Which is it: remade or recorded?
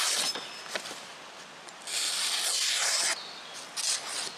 recorded